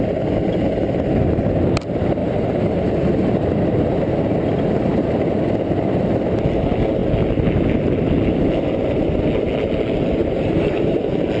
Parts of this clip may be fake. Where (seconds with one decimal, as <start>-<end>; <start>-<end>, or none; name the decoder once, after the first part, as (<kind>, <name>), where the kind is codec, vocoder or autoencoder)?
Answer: 2.2-2.9 (vocoder, BigVGAN v2); 10.2-11.0